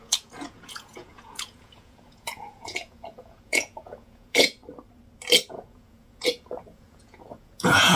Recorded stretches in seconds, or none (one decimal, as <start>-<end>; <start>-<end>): 4.6-5.5